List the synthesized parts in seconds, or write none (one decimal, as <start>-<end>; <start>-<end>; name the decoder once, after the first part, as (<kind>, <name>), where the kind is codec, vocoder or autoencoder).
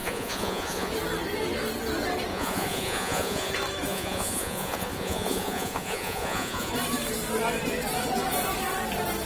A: 0.0-0.9 (vocoder, Vocos); 2.3-3.5; 3.9-6.7